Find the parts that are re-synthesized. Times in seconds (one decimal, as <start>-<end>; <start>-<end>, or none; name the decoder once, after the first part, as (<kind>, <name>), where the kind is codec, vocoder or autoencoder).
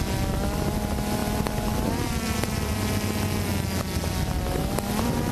none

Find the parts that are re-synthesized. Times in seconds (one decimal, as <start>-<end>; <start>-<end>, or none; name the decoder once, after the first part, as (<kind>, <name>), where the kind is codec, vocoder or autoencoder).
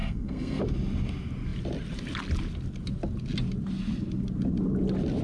0.0-0.6 (codec, SNAC)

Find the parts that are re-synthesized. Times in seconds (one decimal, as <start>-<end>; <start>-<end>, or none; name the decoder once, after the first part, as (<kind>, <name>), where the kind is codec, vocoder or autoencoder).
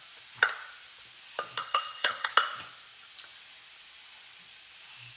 1.6-2.3 (codec, HILCodec)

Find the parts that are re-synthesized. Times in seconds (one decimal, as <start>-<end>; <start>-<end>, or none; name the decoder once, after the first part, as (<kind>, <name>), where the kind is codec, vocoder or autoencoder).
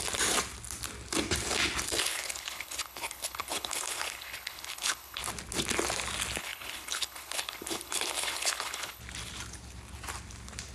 2.0-5.2 (codec, HILCodec); 6.4-9.0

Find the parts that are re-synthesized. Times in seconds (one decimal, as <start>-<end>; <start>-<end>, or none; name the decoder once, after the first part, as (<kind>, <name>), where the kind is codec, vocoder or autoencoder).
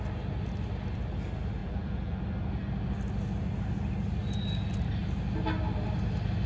1.6-2.2 (vocoder, BigVGAN v2)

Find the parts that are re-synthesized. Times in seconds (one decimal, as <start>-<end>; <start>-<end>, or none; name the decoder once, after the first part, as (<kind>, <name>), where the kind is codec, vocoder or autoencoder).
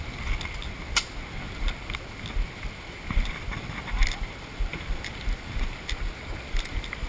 none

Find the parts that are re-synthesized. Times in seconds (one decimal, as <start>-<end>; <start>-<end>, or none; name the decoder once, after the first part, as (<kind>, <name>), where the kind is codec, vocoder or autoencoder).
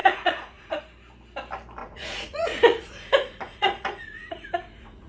0.0-0.8 (vocoder, Vocos); 1.8-5.1